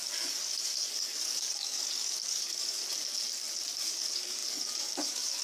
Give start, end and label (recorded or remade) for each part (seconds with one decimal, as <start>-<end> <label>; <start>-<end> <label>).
0.0-2.8 remade; 2.8-3.8 recorded; 3.8-5.4 remade

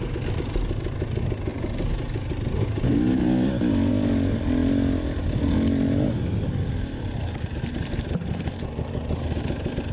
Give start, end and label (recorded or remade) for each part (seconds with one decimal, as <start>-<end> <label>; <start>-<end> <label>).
0.0-9.9 recorded

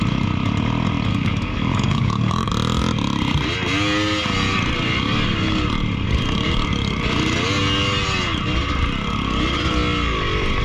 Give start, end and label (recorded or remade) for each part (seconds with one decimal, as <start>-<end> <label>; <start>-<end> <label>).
0.0-1.1 recorded; 1.1-2.5 remade; 2.5-10.6 recorded

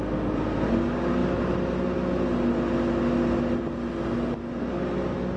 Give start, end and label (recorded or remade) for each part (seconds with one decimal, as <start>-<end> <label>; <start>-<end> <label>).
0.0-5.4 recorded